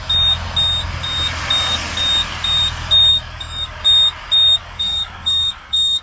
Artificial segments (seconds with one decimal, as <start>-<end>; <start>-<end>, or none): 3.1-3.8; 4.6-6.0